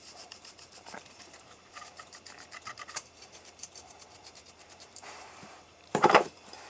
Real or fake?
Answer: fake